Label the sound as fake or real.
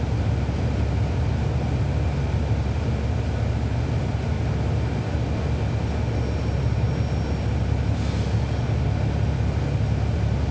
real